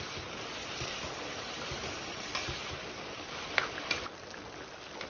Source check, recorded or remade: recorded